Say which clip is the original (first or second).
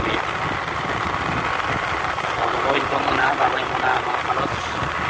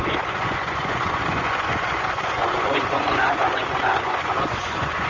first